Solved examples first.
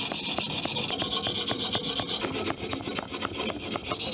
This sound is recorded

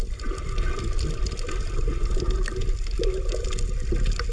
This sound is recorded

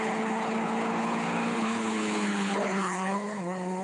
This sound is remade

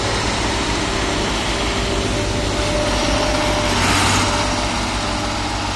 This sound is recorded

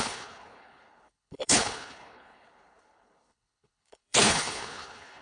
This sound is remade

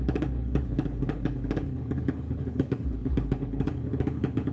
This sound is remade